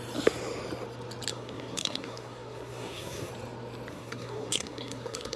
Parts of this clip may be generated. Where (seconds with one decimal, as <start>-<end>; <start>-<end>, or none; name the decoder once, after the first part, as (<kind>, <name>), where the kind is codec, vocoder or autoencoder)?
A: 1.3-3.3 (codec, SNAC); 3.9-5.4